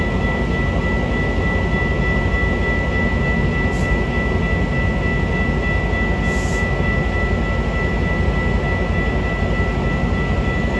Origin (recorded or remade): recorded